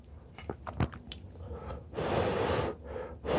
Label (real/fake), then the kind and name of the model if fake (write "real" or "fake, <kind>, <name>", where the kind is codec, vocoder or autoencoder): real